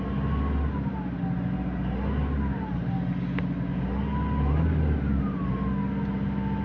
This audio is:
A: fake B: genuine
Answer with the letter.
B